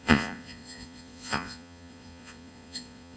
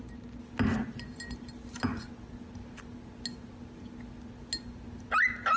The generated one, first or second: first